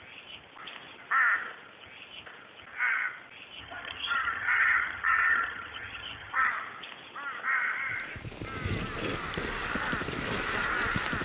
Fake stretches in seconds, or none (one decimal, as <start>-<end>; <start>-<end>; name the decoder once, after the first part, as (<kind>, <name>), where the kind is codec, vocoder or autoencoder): 3.6-6.5 (vocoder, HiFi-GAN)